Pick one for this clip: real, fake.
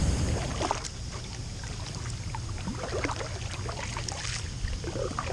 real